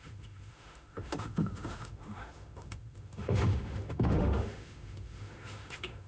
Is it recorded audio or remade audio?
remade